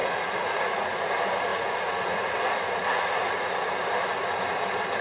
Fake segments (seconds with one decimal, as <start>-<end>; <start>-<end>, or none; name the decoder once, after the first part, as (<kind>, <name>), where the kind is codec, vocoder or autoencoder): 0.0-1.1 (vocoder, Vocos); 1.5-3.5